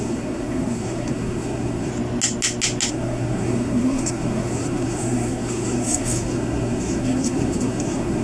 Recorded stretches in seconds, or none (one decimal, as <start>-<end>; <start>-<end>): 1.9-2.9